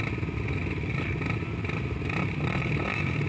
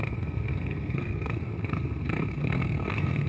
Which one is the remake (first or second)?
second